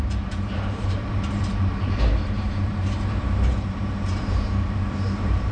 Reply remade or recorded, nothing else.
remade